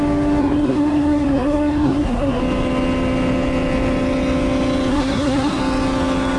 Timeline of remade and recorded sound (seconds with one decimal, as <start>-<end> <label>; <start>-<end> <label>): 0.0-0.4 recorded; 0.4-2.4 remade; 2.4-4.9 recorded; 4.9-5.6 remade; 5.6-6.4 recorded